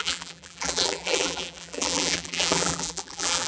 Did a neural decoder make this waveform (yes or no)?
yes